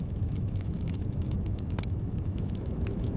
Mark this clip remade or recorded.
remade